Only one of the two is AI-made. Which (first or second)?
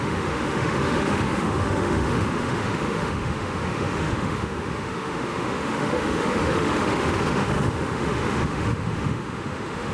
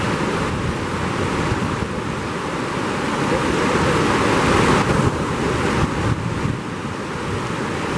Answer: first